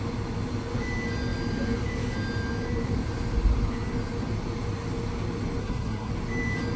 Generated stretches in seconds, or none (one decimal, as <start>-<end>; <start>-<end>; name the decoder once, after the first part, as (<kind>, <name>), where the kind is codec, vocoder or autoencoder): 5.6-6.1 (codec, SNAC)